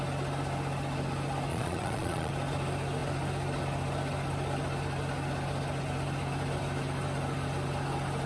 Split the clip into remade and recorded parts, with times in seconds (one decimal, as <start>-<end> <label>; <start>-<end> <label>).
0.0-1.5 recorded; 1.5-2.3 remade; 2.3-8.3 recorded